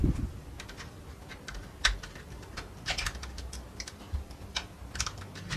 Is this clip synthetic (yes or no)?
no